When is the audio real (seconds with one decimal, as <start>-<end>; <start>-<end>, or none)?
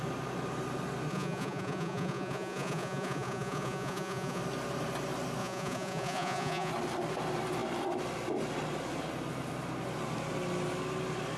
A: 0.0-1.1; 4.4-5.4; 6.7-11.4